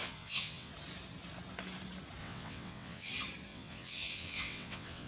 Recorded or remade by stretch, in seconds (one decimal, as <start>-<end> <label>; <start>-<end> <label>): 0.0-0.7 remade; 0.7-2.2 recorded; 2.2-3.1 remade; 3.1-3.5 recorded; 3.5-5.1 remade